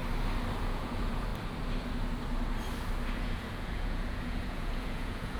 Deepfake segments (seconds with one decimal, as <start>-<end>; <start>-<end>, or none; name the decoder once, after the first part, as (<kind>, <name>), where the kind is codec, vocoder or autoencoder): 0.5-1.3 (vocoder, Vocos); 3.1-5.4